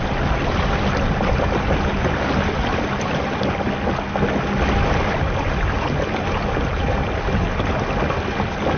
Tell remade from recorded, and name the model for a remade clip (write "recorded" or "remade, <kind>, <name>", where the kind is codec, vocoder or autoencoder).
recorded